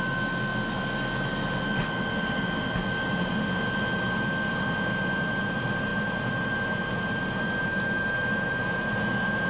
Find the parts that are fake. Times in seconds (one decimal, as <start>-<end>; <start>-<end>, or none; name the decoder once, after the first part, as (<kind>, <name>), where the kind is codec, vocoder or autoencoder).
none